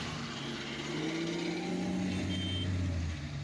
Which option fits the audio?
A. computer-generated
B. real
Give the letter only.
B